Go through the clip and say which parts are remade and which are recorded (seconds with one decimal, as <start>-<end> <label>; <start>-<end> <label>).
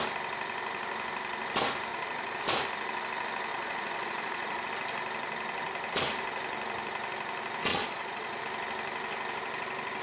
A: 0.0-1.9 recorded; 1.9-2.4 remade; 2.4-3.5 recorded; 3.5-4.7 remade; 4.7-7.7 recorded; 7.7-8.4 remade; 8.4-10.0 recorded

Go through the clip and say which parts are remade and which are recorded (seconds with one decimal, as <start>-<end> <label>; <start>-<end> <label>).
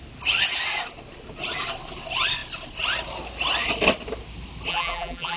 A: 0.0-4.7 recorded; 4.7-5.4 remade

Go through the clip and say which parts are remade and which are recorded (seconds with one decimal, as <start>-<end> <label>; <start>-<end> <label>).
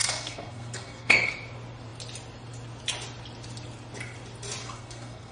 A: 0.0-1.3 remade; 1.3-4.6 recorded; 4.6-5.3 remade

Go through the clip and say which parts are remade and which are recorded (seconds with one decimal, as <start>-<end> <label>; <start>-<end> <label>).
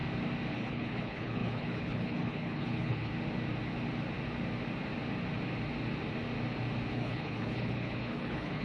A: 0.0-0.5 recorded; 0.5-3.1 remade; 3.1-6.9 recorded; 6.9-8.6 remade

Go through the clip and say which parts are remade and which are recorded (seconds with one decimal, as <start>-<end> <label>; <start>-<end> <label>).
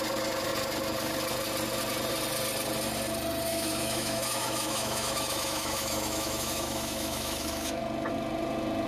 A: 0.0-3.5 recorded; 3.5-7.8 remade; 7.8-8.9 recorded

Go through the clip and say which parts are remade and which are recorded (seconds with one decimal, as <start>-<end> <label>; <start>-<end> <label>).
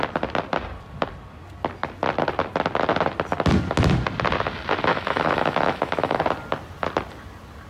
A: 0.0-4.9 recorded; 4.9-6.2 remade; 6.2-7.7 recorded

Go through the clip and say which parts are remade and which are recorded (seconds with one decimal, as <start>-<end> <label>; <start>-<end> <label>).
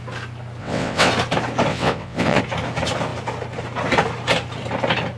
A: 0.0-0.6 recorded; 0.6-1.1 remade; 1.1-1.7 recorded; 1.7-2.4 remade; 2.4-5.2 recorded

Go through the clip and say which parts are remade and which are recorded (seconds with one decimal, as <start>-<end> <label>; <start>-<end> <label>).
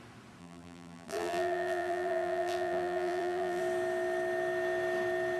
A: 0.0-0.4 recorded; 0.4-3.6 remade; 3.6-5.4 recorded